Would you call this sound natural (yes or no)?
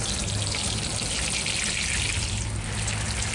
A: yes